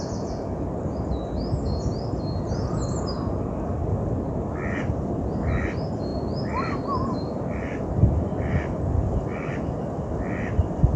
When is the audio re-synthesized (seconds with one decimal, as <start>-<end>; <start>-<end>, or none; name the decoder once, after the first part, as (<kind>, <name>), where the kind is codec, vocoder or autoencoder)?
none